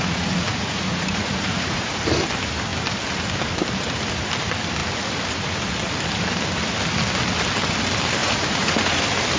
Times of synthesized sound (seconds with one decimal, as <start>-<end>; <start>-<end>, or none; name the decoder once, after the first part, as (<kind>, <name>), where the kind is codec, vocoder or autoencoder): 0.0-2.0 (vocoder, Vocos); 8.2-9.0